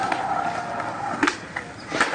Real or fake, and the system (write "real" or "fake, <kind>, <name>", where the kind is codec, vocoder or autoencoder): real